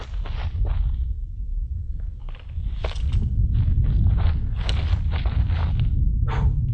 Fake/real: real